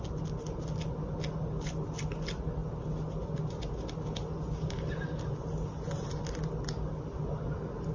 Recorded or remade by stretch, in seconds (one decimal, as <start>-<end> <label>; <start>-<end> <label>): 0.0-7.9 recorded